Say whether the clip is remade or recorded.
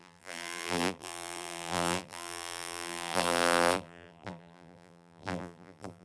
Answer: remade